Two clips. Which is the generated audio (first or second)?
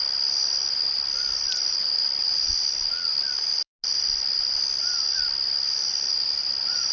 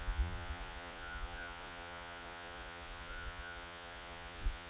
second